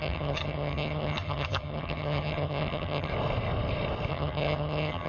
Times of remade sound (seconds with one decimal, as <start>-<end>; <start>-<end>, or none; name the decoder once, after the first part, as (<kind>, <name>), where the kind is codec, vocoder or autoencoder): 0.0-3.1 (vocoder, HiFi-GAN); 4.1-5.1